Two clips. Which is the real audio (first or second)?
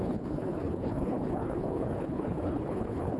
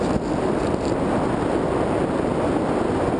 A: second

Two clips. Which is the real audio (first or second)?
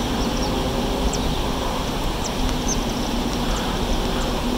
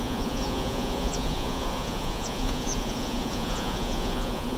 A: first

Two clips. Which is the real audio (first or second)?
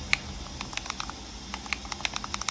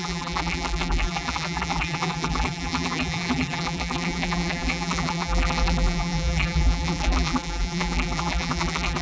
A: first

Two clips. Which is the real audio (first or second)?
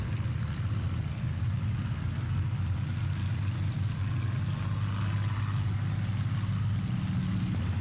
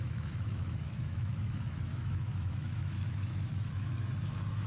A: first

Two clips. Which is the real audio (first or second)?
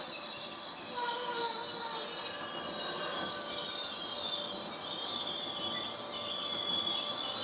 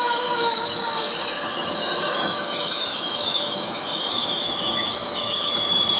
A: first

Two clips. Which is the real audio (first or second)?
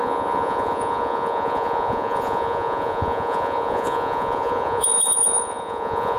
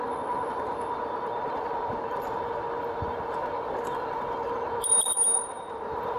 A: second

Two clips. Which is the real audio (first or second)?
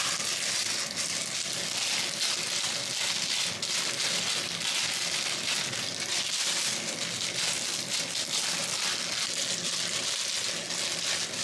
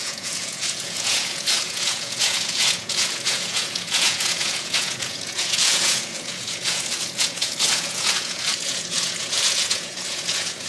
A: first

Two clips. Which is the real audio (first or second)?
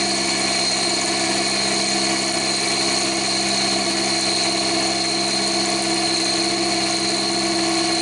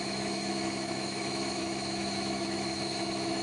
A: first